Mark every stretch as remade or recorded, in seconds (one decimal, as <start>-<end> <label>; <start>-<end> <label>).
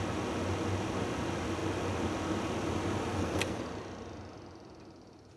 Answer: 0.0-3.1 recorded; 3.1-3.6 remade; 3.6-5.4 recorded